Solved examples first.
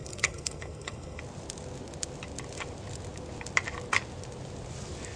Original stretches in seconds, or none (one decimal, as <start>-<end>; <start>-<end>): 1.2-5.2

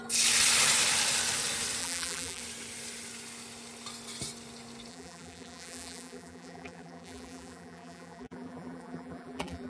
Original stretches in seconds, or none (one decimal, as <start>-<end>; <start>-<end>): 0.0-1.8; 2.4-4.9

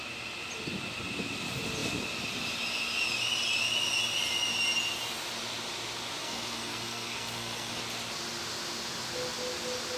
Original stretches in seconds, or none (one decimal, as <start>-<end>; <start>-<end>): 0.0-6.2; 7.8-10.0